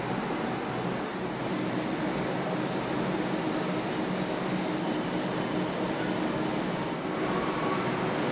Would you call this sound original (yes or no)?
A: yes